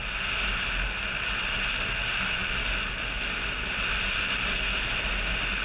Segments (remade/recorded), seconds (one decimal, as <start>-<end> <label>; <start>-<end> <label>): 0.0-5.6 recorded